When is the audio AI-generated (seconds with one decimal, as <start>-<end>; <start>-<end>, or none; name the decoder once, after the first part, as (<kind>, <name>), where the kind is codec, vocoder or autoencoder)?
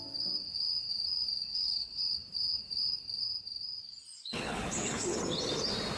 1.5-2.0 (codec, HILCodec); 4.2-5.2